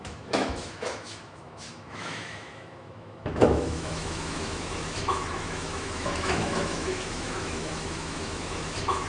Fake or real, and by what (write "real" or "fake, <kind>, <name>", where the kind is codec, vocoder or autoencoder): fake, autoencoder, DAC-VAE